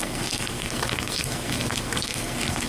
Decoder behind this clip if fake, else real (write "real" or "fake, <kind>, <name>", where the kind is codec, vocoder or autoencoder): fake, codec, SNAC